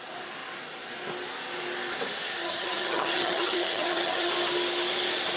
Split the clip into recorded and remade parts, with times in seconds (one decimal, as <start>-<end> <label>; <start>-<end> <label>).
0.0-2.4 recorded; 2.4-4.3 remade; 4.3-5.4 recorded